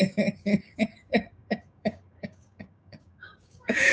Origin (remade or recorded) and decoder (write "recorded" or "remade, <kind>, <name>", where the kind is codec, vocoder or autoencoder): remade, codec, DAC